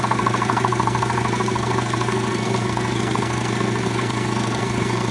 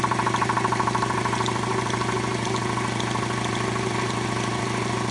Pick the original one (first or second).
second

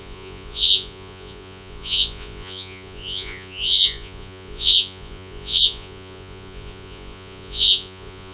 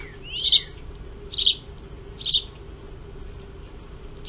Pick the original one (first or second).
second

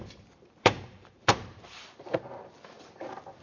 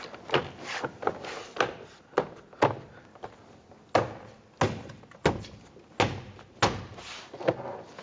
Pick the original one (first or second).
second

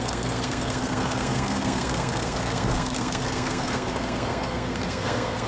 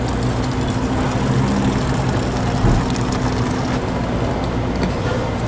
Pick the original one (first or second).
second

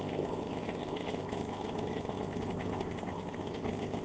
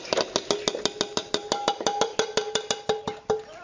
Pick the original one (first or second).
second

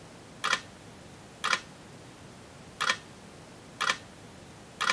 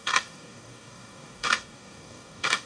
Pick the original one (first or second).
first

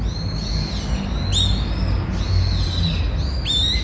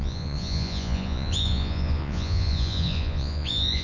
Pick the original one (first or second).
first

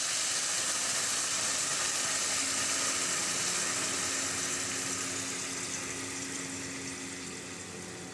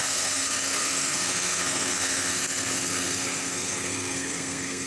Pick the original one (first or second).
first